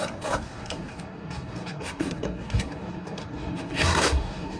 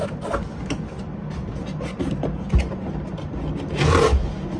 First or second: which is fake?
first